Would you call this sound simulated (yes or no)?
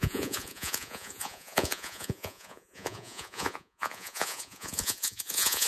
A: yes